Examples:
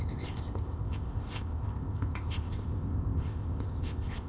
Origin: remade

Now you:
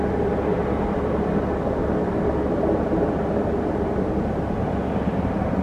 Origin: recorded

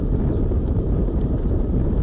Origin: remade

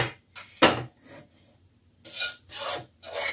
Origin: recorded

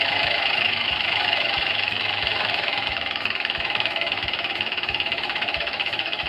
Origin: remade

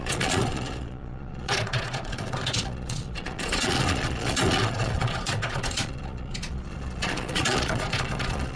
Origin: remade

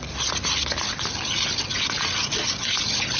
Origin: recorded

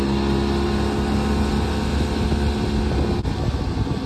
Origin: recorded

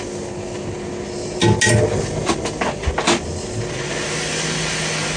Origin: recorded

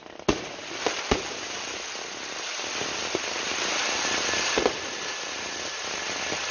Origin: recorded